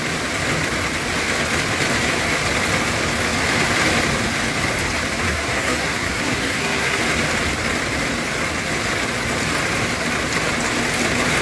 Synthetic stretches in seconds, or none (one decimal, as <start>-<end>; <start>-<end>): 5.3-7.0